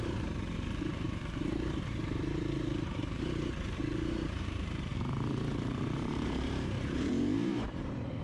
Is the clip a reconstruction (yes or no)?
yes